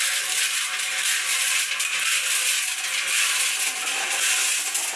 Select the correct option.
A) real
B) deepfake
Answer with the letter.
A